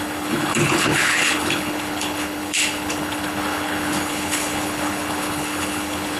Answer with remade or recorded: remade